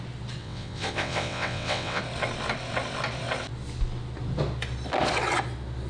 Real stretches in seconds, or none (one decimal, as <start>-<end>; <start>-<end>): 0.0-0.4; 2.0-5.9